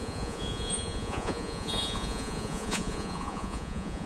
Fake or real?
fake